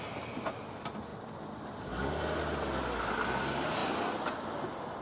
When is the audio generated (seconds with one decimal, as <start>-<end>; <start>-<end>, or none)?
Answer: none